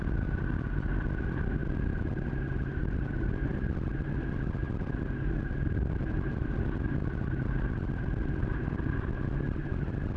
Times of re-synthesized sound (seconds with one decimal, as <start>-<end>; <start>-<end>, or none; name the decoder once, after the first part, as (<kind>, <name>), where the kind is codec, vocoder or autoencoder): none